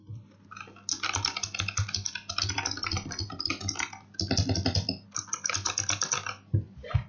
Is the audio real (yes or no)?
yes